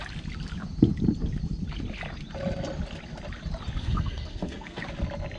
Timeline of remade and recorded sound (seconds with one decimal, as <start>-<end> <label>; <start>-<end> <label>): 0.0-3.8 recorded; 3.8-4.8 remade; 4.8-5.4 recorded